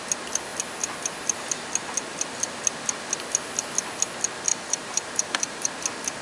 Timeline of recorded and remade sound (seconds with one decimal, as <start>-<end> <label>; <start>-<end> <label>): 0.0-4.5 recorded; 4.5-5.7 remade; 5.7-6.2 recorded